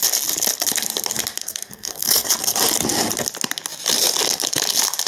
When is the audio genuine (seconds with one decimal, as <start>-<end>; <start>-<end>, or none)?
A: 0.0-1.4; 2.3-5.1